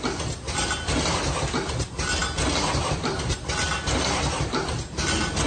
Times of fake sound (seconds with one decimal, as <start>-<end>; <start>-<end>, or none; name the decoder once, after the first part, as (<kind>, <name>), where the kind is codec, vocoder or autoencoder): none